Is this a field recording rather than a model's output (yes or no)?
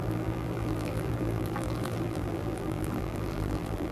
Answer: no